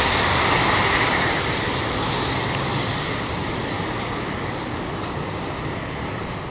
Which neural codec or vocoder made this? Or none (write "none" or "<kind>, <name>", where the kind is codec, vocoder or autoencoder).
none